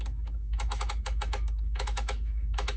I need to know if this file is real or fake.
fake